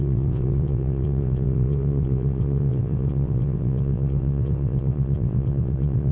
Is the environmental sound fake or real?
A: fake